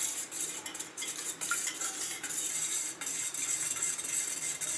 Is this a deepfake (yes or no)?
no